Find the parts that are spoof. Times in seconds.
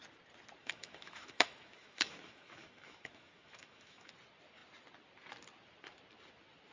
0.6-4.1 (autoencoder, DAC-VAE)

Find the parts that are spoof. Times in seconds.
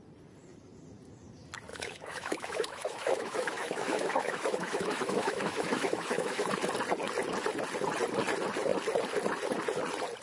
1.7-6.5 (autoencoder, DAC-VAE)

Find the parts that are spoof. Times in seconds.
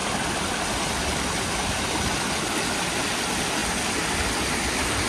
none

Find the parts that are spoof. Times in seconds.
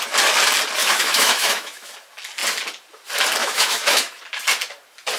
0.8-1.9 (autoencoder, DAC-VAE); 3.4-4.2